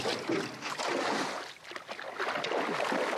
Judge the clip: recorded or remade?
recorded